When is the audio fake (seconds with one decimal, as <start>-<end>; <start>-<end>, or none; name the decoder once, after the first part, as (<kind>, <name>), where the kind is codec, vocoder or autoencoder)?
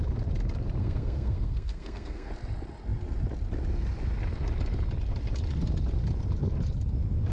0.8-2.3 (codec, SNAC)